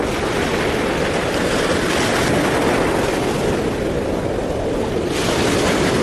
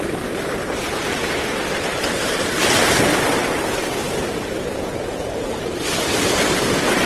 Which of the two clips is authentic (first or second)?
first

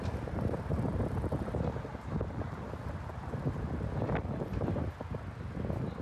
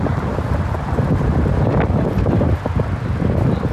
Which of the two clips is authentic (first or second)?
first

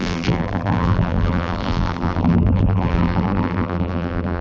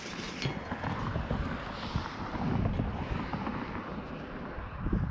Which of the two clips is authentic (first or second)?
second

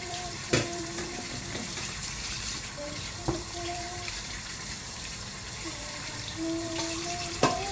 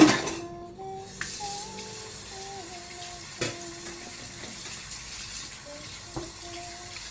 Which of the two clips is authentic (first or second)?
second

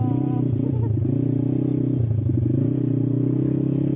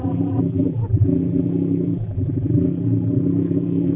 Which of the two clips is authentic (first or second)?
first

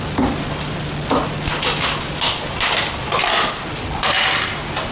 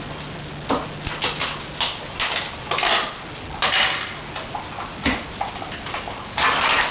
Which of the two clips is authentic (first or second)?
second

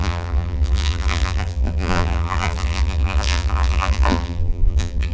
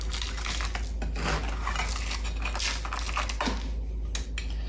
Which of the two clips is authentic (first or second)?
second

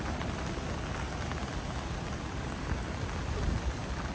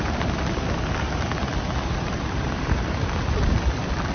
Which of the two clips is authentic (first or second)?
first